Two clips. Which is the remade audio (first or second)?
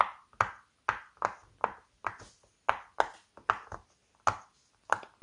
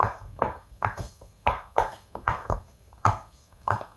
second